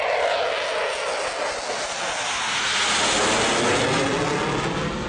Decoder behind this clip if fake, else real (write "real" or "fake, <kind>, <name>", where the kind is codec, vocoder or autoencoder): real